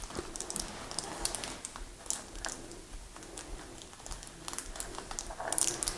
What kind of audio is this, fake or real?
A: real